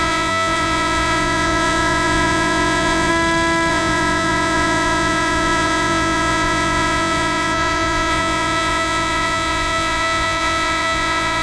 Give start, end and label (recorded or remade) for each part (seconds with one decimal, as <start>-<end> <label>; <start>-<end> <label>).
0.0-3.1 remade; 3.1-3.7 recorded; 3.7-11.4 remade

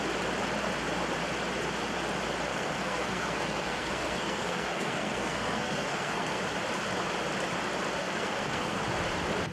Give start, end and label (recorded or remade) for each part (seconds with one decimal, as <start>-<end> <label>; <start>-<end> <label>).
0.0-2.5 recorded; 2.5-6.4 remade; 6.4-8.0 recorded; 8.0-8.8 remade; 8.8-9.5 recorded

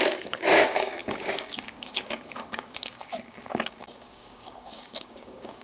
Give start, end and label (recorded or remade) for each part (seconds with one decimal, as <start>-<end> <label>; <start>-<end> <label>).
0.0-5.6 remade

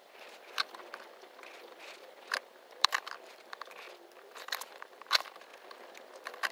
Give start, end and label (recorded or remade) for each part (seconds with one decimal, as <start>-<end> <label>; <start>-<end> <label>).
0.0-5.5 remade; 5.5-6.0 recorded; 6.0-6.5 remade

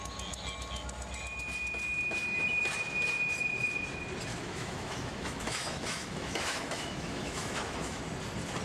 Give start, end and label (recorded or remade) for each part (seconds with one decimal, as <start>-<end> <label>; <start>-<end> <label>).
0.0-4.3 recorded; 4.3-8.0 remade; 8.0-8.6 recorded

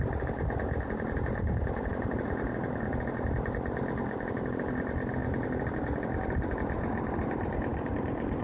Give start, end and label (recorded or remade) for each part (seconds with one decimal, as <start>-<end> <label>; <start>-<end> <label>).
0.0-8.4 recorded

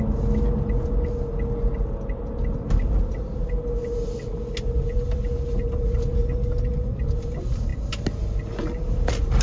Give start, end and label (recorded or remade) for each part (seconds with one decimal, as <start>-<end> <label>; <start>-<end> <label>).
0.0-9.4 recorded